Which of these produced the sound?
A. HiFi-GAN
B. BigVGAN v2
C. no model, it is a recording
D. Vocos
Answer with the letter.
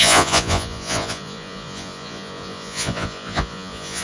D